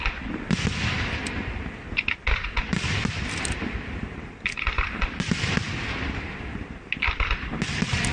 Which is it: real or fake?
real